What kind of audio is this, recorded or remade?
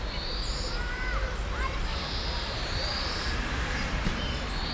remade